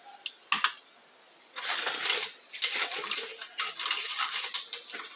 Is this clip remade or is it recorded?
recorded